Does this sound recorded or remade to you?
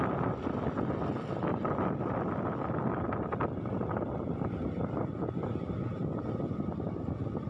recorded